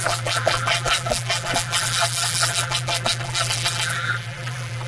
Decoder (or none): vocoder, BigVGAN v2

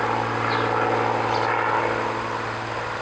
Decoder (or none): none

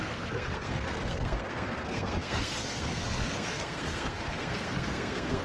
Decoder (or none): codec, SNAC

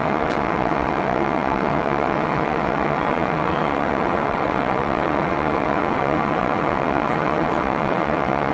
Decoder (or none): vocoder, WaveNeXt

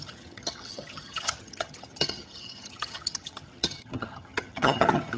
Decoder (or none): vocoder, HiFi-GAN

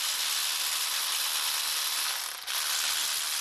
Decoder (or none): none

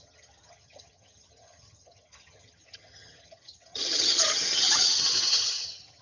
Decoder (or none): vocoder, HiFi-GAN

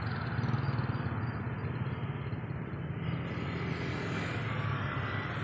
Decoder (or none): none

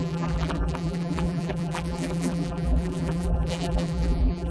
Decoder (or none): vocoder, BigVGAN v2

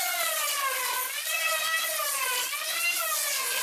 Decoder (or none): none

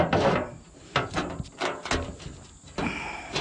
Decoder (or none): none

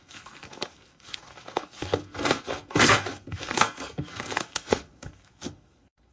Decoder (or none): codec, SNAC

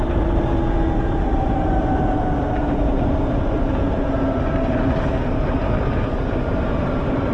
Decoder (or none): vocoder, BigVGAN v2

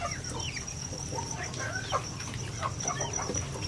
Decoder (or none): none